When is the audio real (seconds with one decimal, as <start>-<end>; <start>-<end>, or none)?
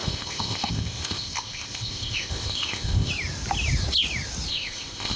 3.1-4.5